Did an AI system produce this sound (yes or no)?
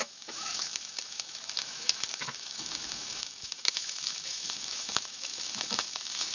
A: yes